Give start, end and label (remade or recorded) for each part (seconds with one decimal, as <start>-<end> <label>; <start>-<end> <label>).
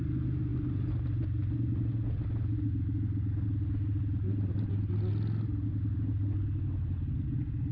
0.0-7.7 recorded